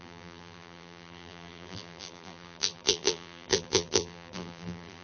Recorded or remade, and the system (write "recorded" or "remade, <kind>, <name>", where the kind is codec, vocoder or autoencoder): remade, vocoder, BigVGAN v2